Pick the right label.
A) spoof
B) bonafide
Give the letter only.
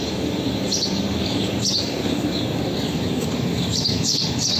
A